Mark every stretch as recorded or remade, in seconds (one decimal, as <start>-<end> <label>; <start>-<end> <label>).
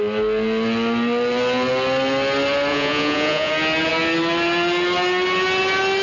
0.0-2.7 recorded; 2.7-3.5 remade; 3.5-6.0 recorded